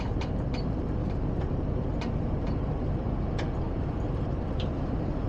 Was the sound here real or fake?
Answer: fake